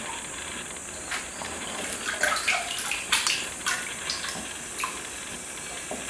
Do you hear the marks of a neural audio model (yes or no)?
no